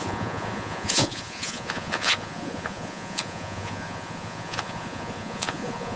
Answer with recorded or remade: remade